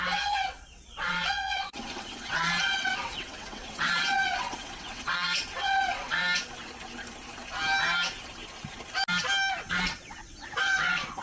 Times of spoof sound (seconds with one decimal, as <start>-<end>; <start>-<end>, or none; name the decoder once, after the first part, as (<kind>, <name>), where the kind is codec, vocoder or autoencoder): 0.0-6.2 (vocoder, WaveNeXt); 9.5-11.2